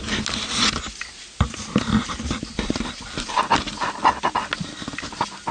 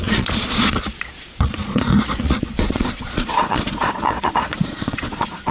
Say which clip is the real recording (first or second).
first